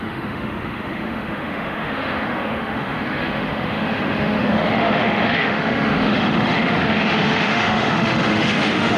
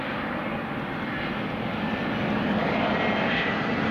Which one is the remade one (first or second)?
first